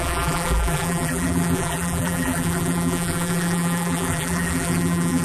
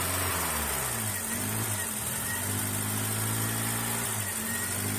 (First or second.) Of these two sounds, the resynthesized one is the first